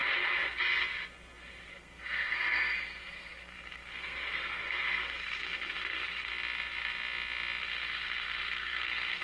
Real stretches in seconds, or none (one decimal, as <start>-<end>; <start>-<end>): 0.0-1.7; 6.3-7.6